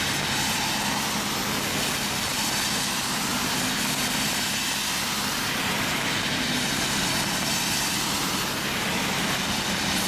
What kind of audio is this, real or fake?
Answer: real